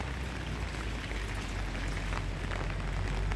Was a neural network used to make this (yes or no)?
no